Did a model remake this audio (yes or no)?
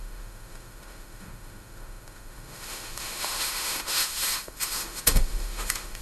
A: yes